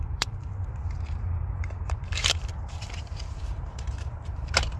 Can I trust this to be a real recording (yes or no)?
no